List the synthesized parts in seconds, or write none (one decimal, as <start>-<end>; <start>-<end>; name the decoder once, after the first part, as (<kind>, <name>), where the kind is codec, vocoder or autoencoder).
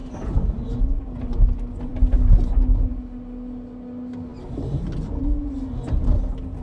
none